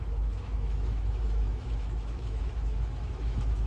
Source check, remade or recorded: remade